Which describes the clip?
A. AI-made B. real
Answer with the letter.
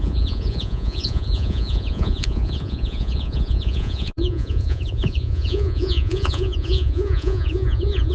A